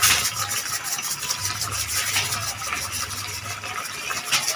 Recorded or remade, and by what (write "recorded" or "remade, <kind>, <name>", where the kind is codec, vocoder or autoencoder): recorded